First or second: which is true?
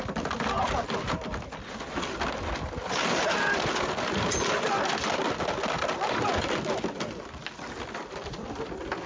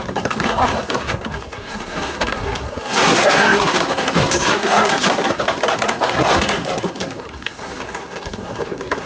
first